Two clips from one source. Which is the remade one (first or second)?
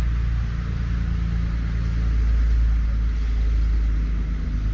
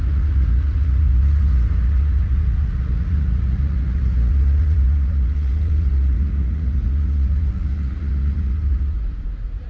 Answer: second